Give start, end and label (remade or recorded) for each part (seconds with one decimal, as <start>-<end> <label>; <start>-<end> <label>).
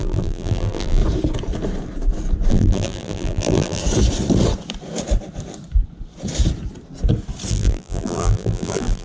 0.0-1.0 remade; 1.0-2.5 recorded; 2.5-3.8 remade; 3.8-7.5 recorded; 7.5-9.0 remade